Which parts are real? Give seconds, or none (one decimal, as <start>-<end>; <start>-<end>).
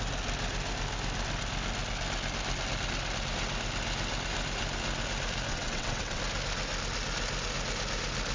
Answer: 0.0-5.5; 6.2-8.3